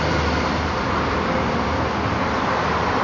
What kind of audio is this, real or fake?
fake